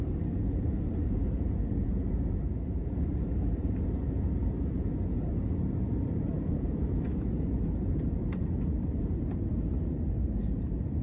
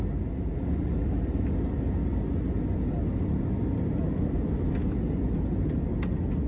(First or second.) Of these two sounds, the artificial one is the first